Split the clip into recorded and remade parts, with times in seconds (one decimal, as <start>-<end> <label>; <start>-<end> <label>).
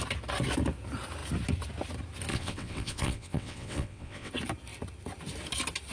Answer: 0.0-2.3 recorded; 2.3-4.3 remade; 4.3-5.9 recorded